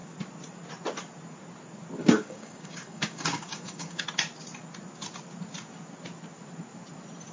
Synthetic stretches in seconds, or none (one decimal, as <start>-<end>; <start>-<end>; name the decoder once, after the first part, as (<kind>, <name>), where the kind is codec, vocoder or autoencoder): 2.0-4.0 (codec, DAC)